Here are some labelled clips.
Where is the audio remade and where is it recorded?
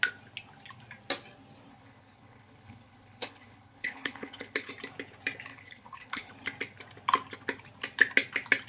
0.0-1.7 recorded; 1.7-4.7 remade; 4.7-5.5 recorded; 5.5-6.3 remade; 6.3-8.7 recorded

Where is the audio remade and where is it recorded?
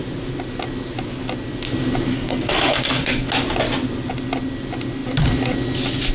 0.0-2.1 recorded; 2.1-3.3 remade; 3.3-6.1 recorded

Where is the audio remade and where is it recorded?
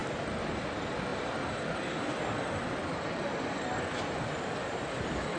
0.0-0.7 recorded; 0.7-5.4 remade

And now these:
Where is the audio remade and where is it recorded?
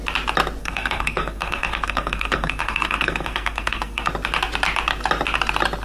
0.0-0.6 recorded; 0.6-4.1 remade; 4.1-5.8 recorded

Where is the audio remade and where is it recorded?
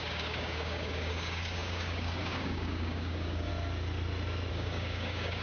0.0-3.5 remade; 3.5-4.5 recorded; 4.5-5.4 remade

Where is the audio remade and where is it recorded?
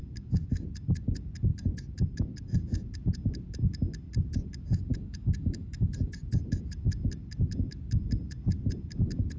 0.0-4.9 recorded; 4.9-6.2 remade; 6.2-9.4 recorded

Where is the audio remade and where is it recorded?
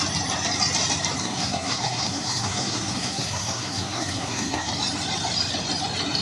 0.0-1.2 recorded; 1.2-4.7 remade; 4.7-6.2 recorded